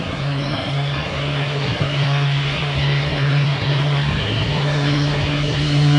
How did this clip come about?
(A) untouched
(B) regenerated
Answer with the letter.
B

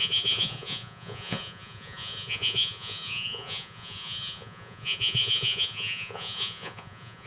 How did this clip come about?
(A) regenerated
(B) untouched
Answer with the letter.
A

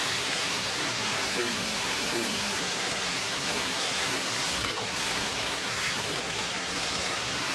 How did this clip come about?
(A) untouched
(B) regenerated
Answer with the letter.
B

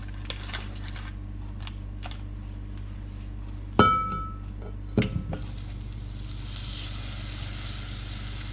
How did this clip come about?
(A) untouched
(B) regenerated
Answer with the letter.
A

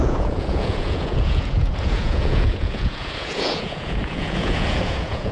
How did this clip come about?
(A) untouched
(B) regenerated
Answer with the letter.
B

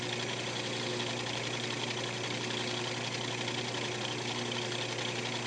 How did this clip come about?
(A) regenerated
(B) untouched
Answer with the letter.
B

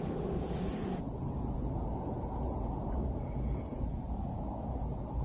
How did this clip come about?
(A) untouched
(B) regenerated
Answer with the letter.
B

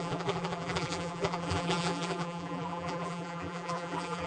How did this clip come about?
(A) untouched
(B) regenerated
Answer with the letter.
B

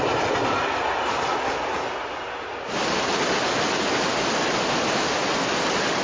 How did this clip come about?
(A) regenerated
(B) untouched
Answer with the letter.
B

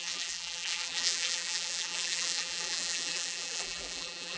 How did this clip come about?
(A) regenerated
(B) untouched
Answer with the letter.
A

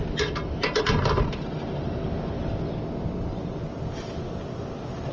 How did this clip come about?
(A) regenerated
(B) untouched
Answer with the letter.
B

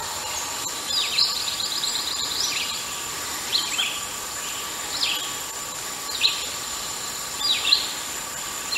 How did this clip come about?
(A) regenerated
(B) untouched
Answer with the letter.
A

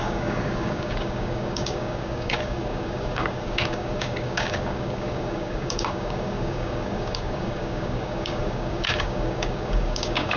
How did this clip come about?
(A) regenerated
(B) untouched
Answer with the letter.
A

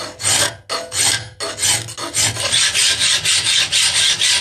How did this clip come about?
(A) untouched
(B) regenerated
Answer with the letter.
A